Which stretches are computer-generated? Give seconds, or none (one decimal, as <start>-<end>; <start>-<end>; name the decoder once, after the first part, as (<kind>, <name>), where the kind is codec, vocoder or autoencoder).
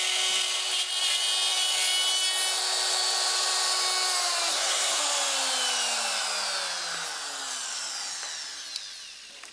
4.5-5.0 (codec, SNAC)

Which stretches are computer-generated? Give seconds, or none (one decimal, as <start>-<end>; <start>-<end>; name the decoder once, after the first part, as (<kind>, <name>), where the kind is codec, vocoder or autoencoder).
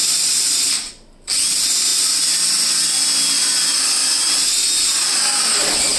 none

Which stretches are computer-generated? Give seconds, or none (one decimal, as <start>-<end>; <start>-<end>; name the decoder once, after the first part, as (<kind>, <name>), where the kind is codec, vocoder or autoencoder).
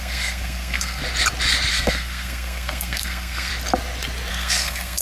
0.0-1.0 (codec, SNAC); 1.7-3.5; 4.3-5.0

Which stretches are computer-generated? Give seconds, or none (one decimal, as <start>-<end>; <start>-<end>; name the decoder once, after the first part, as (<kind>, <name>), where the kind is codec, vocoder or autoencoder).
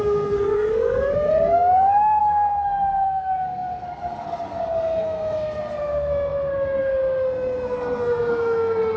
0.0-9.0 (codec, SNAC)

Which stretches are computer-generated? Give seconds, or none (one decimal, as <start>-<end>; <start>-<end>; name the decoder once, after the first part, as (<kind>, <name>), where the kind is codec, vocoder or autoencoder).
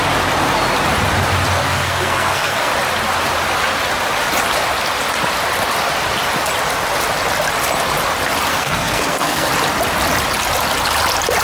1.6-2.7 (codec, SNAC); 8.5-9.5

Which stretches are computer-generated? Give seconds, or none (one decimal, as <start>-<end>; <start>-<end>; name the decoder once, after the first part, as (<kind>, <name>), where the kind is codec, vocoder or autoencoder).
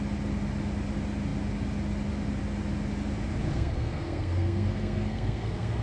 3.5-5.8 (codec, SNAC)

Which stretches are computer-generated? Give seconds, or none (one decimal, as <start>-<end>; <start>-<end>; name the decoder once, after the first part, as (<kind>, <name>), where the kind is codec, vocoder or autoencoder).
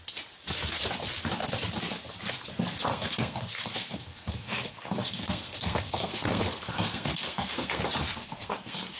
2.9-7.8 (codec, SNAC); 8.2-9.0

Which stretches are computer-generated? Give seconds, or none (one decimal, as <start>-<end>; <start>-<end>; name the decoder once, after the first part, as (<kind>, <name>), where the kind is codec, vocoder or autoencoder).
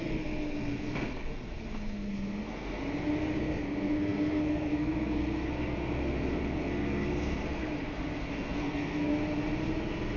0.0-2.8 (codec, SNAC); 3.4-9.1